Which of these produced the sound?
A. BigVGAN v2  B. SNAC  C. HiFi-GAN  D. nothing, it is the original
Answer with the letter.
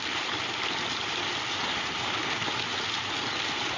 D